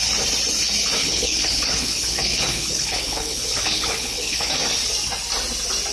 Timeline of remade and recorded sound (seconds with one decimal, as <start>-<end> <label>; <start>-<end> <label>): 0.0-1.0 recorded; 1.0-4.5 remade; 4.5-5.9 recorded